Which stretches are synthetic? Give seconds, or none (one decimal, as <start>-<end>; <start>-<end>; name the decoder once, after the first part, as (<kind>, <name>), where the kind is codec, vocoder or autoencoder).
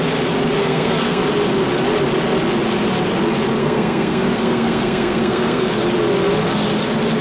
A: 0.6-1.2 (codec, SNAC); 3.6-5.8